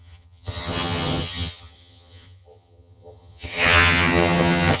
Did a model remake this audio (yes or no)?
yes